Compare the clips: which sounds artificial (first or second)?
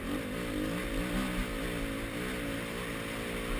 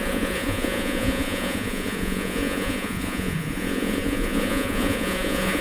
second